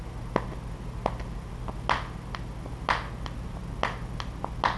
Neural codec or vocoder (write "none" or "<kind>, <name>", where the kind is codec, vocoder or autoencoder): none